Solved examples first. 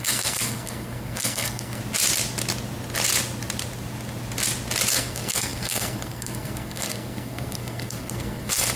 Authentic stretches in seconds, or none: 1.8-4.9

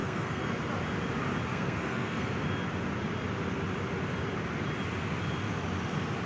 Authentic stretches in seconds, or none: 0.5-1.5; 2.3-6.3

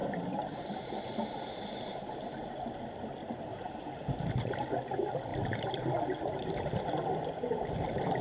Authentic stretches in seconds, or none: 0.0-8.2

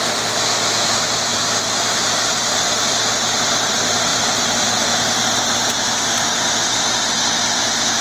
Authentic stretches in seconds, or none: 0.0-1.3; 2.2-4.1; 5.9-8.0

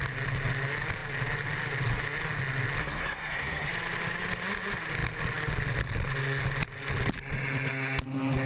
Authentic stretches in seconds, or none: 0.0-2.8; 3.7-8.5